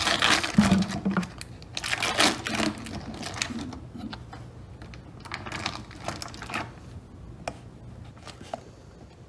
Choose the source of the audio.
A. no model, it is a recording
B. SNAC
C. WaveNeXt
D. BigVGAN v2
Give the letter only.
A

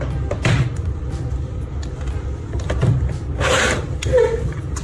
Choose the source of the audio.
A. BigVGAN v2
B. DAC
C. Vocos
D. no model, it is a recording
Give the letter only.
A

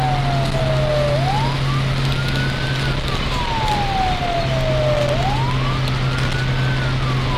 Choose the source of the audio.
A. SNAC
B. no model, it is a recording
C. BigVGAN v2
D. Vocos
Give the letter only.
B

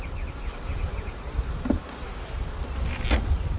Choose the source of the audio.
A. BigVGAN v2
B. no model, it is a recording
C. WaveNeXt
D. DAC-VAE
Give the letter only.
B